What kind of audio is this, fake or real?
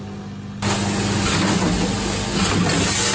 real